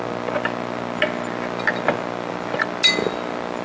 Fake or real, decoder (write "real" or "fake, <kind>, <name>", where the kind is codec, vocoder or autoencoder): real